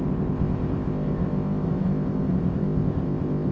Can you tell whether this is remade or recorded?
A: remade